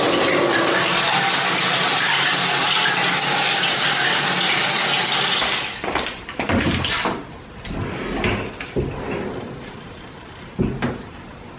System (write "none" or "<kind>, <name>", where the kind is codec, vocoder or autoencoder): none